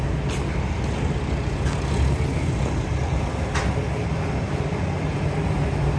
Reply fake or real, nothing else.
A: real